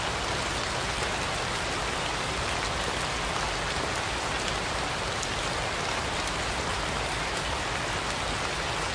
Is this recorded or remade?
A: recorded